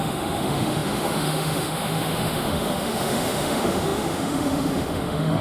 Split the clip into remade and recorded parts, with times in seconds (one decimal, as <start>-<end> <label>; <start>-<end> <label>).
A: 0.0-5.4 remade